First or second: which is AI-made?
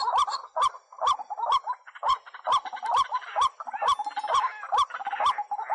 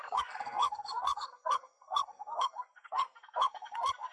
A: second